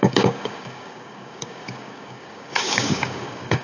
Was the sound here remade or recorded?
remade